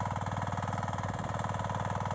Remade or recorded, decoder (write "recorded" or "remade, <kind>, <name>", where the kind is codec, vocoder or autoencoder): recorded